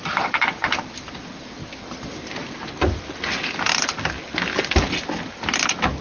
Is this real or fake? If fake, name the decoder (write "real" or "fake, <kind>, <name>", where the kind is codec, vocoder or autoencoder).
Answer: real